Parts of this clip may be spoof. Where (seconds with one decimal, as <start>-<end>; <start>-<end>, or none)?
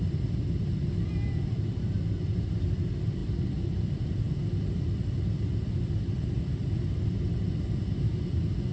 none